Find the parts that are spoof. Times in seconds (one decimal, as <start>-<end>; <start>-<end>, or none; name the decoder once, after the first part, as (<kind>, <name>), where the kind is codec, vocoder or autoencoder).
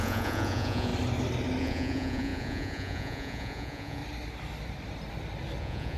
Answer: 0.0-0.9 (vocoder, Vocos); 1.6-4.0; 5.6-6.0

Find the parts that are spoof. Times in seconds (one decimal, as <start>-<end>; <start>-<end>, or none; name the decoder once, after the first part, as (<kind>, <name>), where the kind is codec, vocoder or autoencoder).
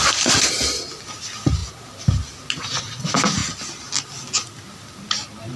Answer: none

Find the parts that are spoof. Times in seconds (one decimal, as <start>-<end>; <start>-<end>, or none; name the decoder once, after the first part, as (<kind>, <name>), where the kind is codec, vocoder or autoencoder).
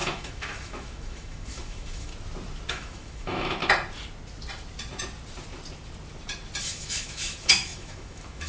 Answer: 0.0-2.1 (autoencoder, DAC-VAE); 2.7-3.6; 6.6-8.5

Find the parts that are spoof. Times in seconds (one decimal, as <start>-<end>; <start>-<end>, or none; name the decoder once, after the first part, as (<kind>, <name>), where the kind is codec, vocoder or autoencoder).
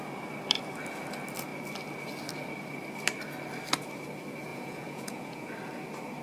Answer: 4.5-5.5 (vocoder, Vocos)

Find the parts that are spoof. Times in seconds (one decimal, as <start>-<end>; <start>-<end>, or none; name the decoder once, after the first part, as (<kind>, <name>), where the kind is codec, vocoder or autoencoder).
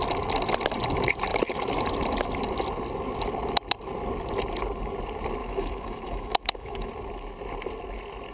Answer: 5.4-6.9 (autoencoder, DAC-VAE)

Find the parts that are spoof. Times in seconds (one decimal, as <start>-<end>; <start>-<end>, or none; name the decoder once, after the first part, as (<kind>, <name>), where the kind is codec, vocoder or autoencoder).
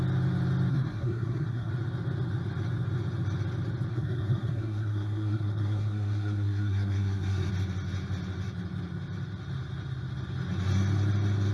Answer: 0.7-1.7 (codec, SNAC); 3.9-7.5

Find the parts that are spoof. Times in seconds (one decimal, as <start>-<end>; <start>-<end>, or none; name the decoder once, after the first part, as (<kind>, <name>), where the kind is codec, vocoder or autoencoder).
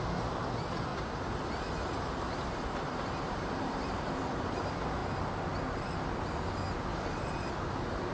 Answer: 0.9-4.5 (vocoder, BigVGAN v2); 6.9-7.5